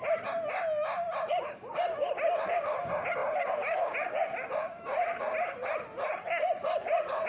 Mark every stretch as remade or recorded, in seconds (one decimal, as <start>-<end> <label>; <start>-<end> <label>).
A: 0.0-7.3 recorded